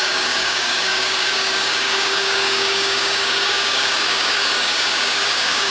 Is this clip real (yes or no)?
no